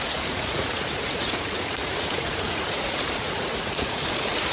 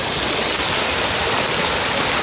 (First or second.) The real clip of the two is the second